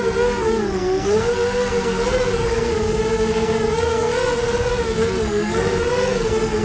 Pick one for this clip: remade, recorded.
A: remade